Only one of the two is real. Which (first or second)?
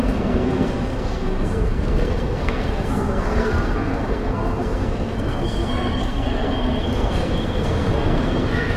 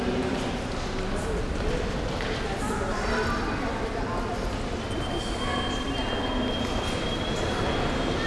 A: second